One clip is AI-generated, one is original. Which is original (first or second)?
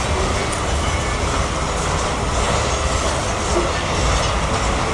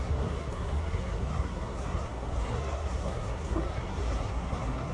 first